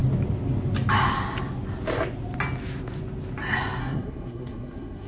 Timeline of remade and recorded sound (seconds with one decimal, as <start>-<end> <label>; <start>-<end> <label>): 0.0-3.8 recorded; 3.8-5.1 remade